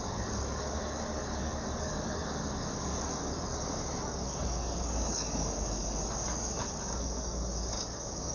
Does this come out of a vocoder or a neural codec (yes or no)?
yes